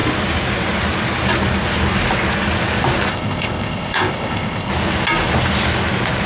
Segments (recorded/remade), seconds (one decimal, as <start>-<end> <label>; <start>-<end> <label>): 0.0-3.1 recorded; 3.1-4.7 remade; 4.7-6.3 recorded